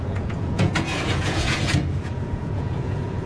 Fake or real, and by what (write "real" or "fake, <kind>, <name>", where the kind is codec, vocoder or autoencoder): fake, vocoder, Vocos